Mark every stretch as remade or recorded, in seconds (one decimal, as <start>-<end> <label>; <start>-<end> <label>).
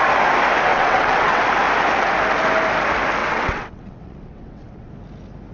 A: 0.0-0.7 recorded; 0.7-1.4 remade; 1.4-3.2 recorded; 3.2-4.9 remade; 4.9-5.5 recorded